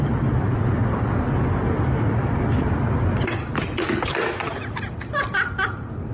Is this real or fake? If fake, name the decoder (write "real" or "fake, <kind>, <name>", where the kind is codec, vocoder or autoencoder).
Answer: real